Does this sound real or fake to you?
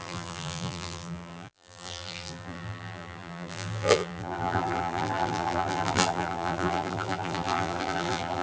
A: fake